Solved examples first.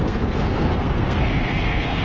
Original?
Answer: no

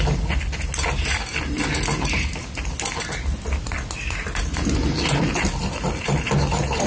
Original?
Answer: yes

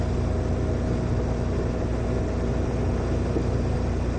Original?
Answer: yes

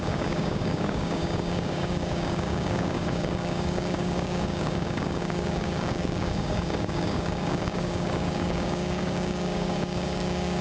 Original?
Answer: no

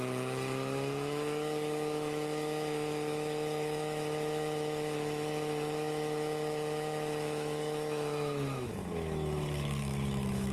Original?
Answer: no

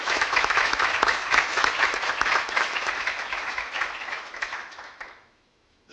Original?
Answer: no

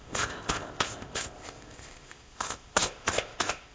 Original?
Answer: no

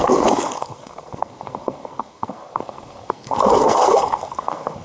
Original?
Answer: no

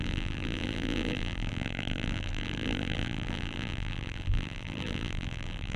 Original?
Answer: no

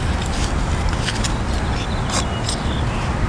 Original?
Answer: yes